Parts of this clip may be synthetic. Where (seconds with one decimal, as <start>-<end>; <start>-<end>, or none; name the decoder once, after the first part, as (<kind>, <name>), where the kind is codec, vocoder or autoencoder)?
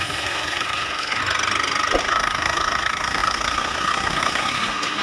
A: 0.0-1.2 (codec, SNAC); 2.0-5.0